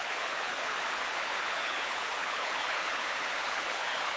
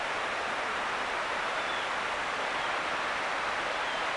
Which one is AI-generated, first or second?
first